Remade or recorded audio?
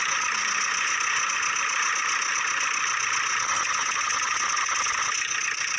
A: recorded